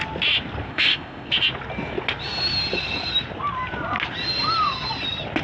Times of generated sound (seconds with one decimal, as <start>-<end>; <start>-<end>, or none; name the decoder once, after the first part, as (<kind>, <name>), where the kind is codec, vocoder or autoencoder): 0.7-1.3 (codec, ZipCodec)